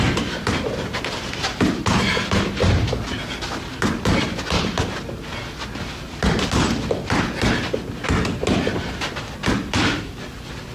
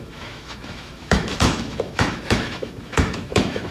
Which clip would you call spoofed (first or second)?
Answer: second